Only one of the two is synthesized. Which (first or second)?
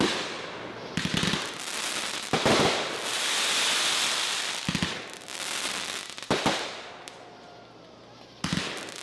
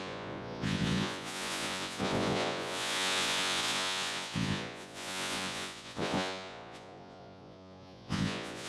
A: second